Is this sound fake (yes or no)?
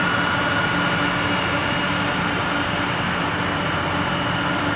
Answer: no